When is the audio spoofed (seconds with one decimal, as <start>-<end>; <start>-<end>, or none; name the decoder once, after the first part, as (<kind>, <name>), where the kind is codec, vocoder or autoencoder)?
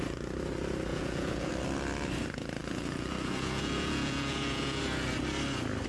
0.9-1.5 (vocoder, Vocos); 2.6-4.8